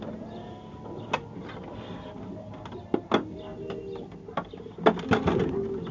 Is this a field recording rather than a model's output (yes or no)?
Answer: yes